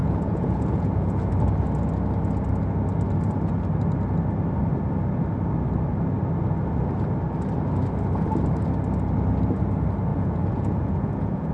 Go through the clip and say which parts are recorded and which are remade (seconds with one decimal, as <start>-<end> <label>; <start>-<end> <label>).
0.0-1.3 remade; 1.3-10.1 recorded; 10.1-11.5 remade